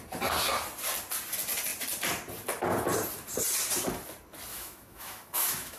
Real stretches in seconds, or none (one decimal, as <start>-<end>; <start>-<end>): 0.0-4.5